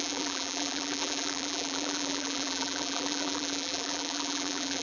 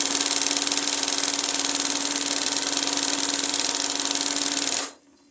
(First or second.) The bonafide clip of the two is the second